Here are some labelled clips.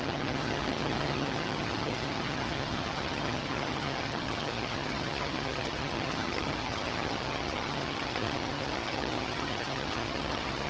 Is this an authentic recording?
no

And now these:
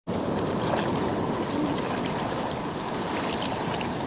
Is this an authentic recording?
yes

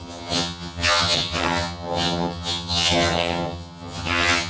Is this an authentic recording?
no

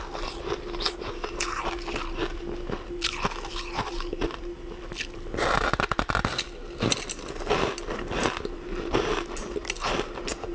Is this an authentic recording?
yes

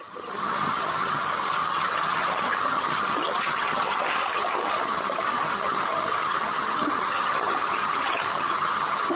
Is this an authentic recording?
no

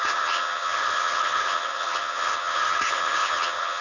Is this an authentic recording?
no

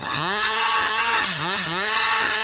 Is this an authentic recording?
no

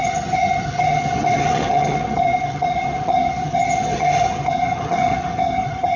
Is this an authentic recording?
no